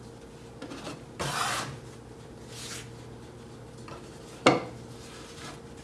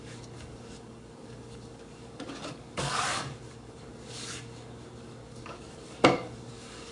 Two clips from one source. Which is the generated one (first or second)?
second